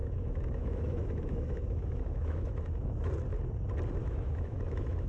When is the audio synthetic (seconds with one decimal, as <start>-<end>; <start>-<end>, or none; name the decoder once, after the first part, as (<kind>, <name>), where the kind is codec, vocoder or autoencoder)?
0.0-3.1 (autoencoder, DAC-VAE); 4.0-5.1